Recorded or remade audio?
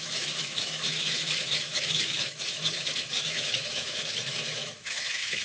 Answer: remade